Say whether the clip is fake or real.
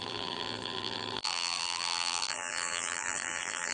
fake